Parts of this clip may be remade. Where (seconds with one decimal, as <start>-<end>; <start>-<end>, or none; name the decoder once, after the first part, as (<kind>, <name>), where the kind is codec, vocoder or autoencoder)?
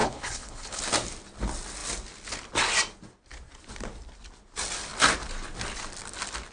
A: 0.0-0.8 (codec, HILCodec)